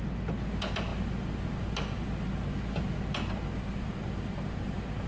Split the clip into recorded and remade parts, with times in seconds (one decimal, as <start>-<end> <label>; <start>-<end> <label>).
0.0-5.1 recorded